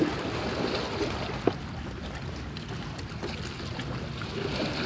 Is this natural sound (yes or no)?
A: yes